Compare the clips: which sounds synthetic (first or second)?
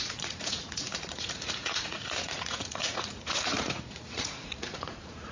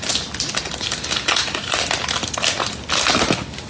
first